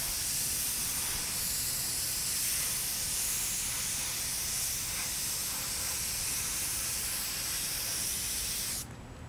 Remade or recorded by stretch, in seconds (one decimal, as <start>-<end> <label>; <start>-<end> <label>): 0.0-6.7 recorded; 6.7-8.1 remade; 8.1-9.3 recorded